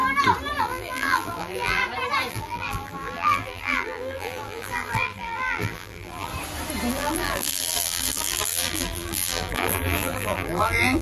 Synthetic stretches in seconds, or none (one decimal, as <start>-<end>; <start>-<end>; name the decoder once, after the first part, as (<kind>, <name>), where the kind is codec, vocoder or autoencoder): 0.6-1.8 (vocoder, BigVGAN v2); 2.3-6.3; 6.9-11.0